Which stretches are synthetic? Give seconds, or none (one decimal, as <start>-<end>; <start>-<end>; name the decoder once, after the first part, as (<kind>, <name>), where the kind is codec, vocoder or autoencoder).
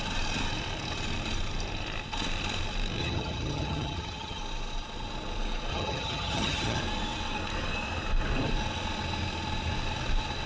3.0-4.4 (vocoder, HiFi-GAN); 5.7-6.8